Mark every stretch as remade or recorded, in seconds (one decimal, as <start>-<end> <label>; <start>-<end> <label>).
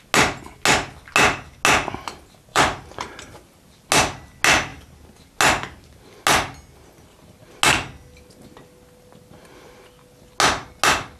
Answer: 0.0-2.5 recorded; 2.5-3.9 remade; 3.9-11.2 recorded